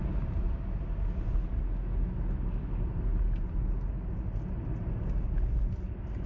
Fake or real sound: real